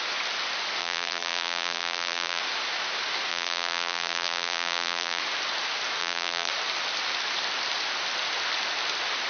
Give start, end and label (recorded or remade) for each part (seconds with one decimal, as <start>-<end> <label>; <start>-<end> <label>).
0.0-0.8 recorded; 0.8-2.4 remade; 2.4-3.3 recorded; 3.3-5.2 remade; 5.2-6.0 recorded; 6.0-6.5 remade; 6.5-9.3 recorded